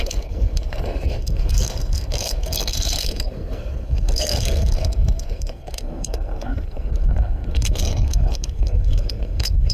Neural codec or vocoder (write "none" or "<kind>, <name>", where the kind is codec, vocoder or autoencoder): codec, SNAC